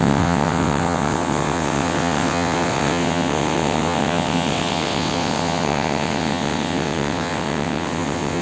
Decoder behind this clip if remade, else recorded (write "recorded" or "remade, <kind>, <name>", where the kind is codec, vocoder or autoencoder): remade, vocoder, WaveNeXt